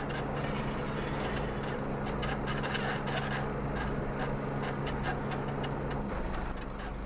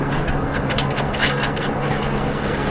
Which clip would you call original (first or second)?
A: first